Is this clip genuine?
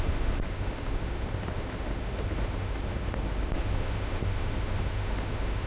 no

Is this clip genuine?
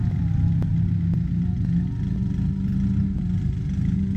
yes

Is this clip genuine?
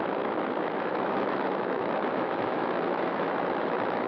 no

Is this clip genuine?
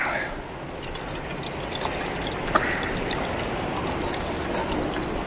yes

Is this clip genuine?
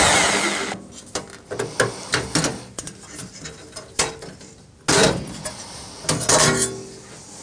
yes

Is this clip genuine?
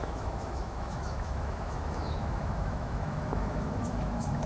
no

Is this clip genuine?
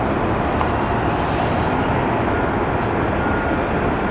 yes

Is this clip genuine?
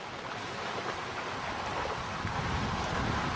yes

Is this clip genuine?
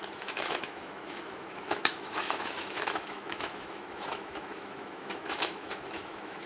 no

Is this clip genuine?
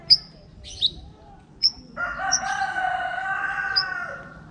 yes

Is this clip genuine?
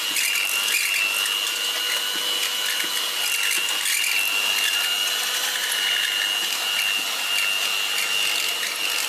yes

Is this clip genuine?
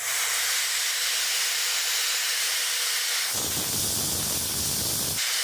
yes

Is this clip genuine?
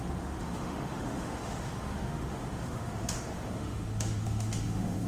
no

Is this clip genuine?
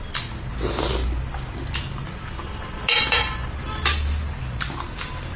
yes